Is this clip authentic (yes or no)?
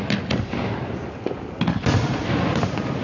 yes